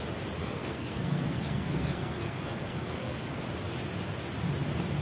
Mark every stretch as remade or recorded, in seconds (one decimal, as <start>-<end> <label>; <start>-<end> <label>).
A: 0.0-0.4 recorded; 0.4-3.4 remade; 3.4-5.0 recorded